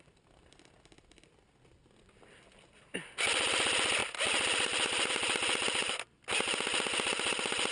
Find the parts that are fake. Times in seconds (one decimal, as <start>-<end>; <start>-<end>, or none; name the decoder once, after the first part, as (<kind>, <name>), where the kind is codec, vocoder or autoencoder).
4.0-5.1 (vocoder, BigVGAN v2); 5.8-6.3